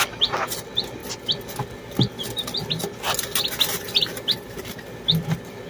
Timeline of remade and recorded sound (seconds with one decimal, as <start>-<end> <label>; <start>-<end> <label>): 0.0-5.7 recorded